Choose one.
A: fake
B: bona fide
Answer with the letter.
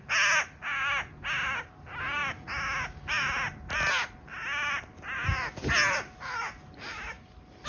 B